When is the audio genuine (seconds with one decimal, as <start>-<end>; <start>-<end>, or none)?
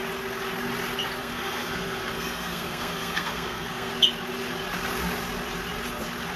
0.0-1.2; 3.9-6.4